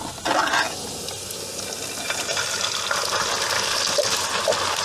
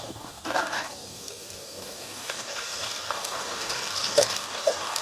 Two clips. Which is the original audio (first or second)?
first